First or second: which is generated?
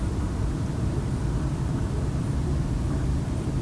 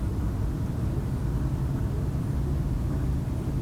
first